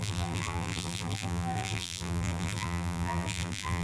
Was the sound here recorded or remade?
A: remade